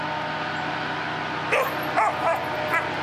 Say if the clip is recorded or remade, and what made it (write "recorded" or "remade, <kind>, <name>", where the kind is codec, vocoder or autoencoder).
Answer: recorded